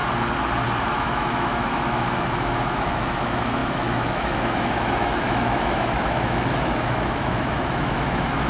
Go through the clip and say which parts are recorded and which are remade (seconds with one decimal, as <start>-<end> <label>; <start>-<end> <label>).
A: 0.0-0.8 recorded; 0.8-8.5 remade